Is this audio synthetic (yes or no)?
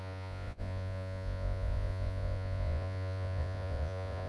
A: yes